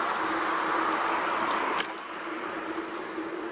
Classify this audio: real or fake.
real